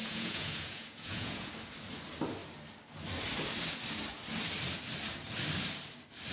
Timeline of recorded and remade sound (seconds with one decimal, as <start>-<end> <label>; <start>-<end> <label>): 0.0-1.5 remade; 1.5-6.3 recorded